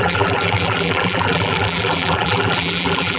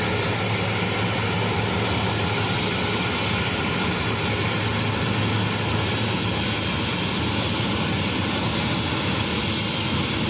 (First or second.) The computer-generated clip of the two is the first